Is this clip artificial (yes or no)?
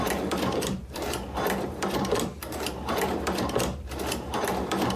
yes